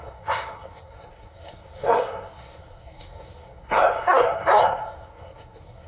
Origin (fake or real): fake